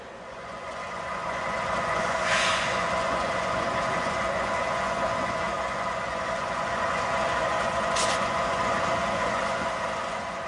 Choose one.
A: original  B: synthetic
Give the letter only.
B